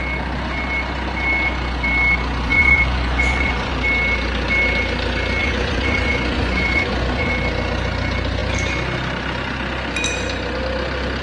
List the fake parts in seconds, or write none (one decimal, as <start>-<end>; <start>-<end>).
2.5-3.7; 5.4-7.3